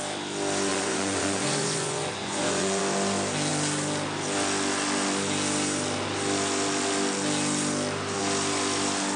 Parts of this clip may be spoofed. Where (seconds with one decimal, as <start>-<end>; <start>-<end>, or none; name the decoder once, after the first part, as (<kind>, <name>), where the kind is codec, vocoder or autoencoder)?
0.7-2.8 (vocoder, Vocos)